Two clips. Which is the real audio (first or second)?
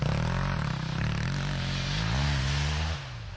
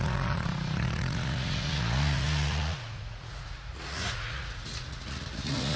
first